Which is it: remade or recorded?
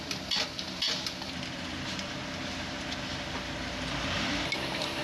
recorded